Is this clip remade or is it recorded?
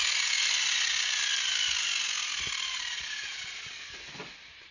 recorded